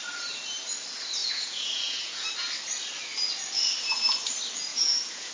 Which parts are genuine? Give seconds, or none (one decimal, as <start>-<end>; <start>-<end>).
0.0-1.2; 2.3-4.7